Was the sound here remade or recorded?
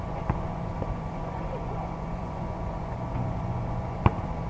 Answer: remade